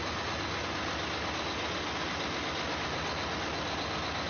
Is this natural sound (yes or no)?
yes